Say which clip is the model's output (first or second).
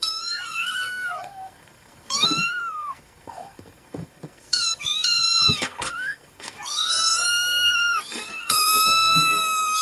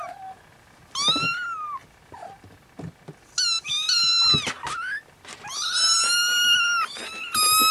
first